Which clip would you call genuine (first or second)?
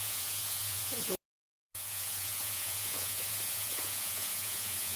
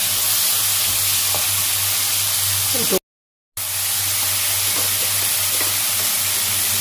second